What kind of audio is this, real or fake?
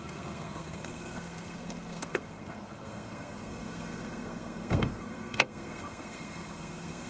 fake